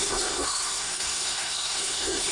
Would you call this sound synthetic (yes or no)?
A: yes